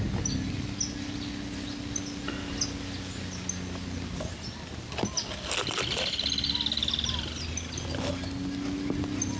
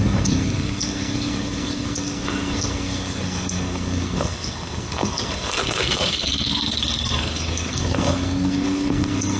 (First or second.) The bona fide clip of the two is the first